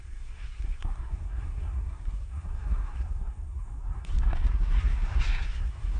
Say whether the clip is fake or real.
fake